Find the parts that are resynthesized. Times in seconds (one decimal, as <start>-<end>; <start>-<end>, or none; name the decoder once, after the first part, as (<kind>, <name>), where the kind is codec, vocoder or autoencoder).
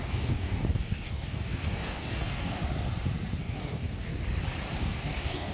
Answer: 0.0-2.6 (codec, DAC); 3.4-4.1; 4.8-5.5